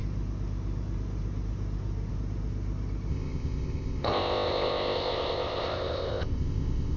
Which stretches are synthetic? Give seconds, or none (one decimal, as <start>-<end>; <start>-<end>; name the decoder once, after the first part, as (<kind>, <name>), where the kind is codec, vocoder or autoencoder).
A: 3.1-7.0 (codec, ZipCodec)